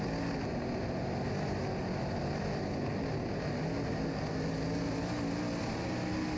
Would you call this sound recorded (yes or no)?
yes